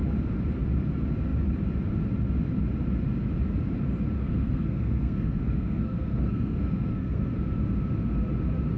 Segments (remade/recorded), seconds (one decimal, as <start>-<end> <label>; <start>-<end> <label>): 0.0-4.2 recorded; 4.2-7.3 remade; 7.3-8.8 recorded